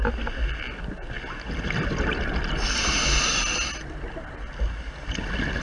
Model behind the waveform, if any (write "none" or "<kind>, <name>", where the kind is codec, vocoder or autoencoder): none